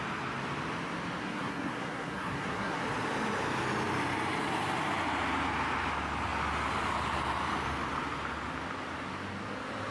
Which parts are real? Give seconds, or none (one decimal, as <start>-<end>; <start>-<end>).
0.0-1.2; 2.8-9.9